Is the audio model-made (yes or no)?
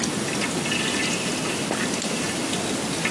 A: no